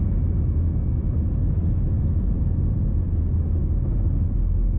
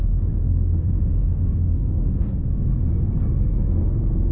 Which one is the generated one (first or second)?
second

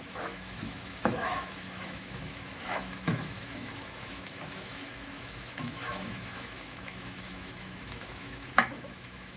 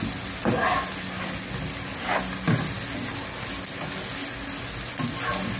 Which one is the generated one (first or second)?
first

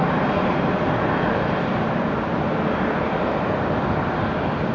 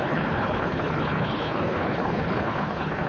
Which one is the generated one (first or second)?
second